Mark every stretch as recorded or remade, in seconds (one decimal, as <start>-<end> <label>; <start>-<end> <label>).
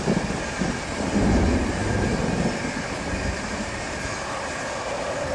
0.0-5.3 recorded